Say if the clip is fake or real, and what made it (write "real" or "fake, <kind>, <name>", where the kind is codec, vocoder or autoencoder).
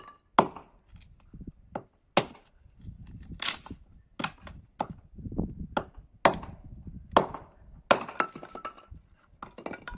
real